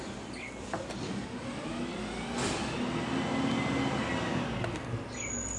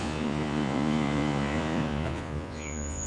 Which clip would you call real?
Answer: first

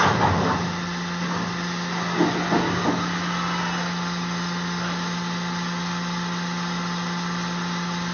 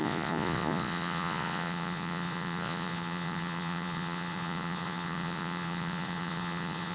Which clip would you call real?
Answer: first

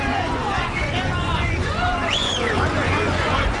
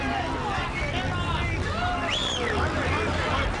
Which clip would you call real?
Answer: second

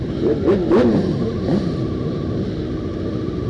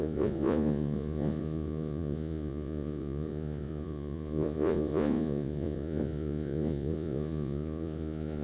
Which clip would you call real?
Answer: first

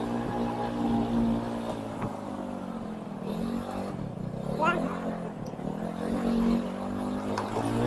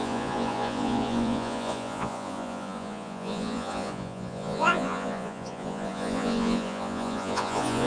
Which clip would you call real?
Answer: first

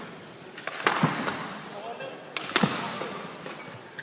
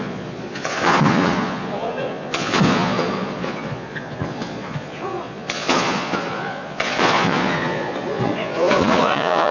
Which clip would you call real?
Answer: first